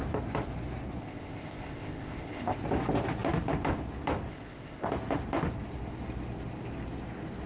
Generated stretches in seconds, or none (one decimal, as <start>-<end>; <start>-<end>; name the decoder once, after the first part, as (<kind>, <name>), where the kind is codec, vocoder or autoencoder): 1.0-2.6 (codec, ZipCodec); 4.3-4.9